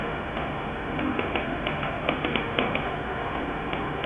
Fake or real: fake